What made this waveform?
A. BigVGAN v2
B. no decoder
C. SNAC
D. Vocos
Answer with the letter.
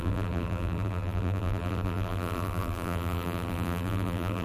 A